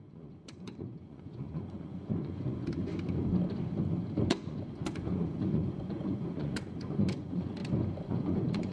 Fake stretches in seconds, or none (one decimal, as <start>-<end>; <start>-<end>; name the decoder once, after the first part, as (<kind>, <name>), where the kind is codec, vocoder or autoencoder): 0.0-2.9 (vocoder, Vocos); 4.3-7.6; 8.1-8.7